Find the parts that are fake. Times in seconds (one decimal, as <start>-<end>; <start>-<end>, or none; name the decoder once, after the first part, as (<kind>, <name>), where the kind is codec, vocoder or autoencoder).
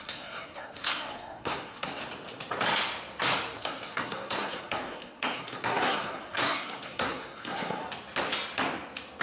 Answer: 0.0-2.0 (codec, SNAC); 3.6-7.8